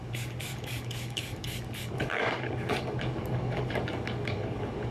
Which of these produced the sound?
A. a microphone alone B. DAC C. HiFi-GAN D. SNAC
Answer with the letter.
B